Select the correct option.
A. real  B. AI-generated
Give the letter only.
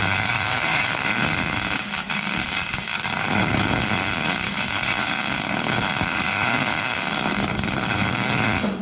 B